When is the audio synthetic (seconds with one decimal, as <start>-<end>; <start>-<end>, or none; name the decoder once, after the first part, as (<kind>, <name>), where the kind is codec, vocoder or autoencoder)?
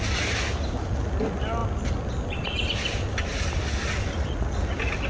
none